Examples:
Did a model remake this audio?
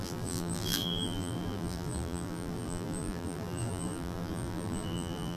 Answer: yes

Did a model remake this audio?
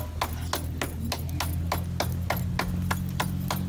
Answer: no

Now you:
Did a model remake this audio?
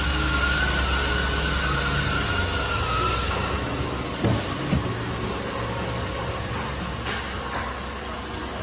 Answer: no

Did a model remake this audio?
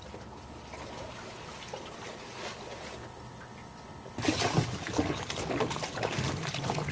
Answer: no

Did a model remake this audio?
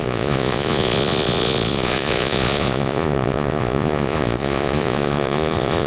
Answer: yes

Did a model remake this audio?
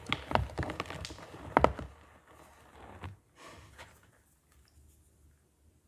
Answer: no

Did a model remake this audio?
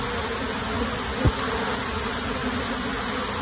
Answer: no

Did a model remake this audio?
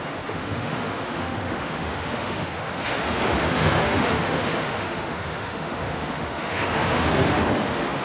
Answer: yes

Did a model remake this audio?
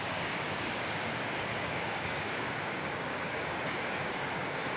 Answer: yes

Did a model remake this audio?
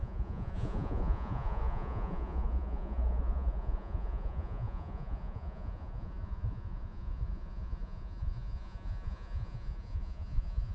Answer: yes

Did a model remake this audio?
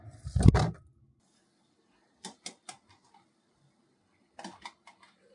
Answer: no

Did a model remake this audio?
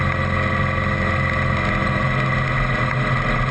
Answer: no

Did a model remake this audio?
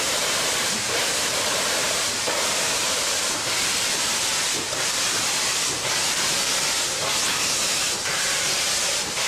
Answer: yes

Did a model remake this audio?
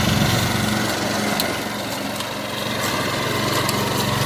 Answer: no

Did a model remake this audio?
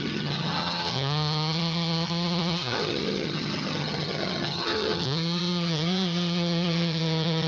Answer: yes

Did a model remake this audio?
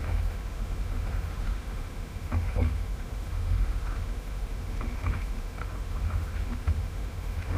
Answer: yes